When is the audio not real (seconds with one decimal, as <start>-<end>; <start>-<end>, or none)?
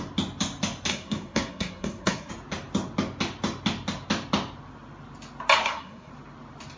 0.9-2.3; 5.6-6.1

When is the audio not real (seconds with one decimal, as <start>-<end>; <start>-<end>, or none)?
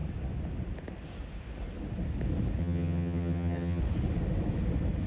2.6-3.8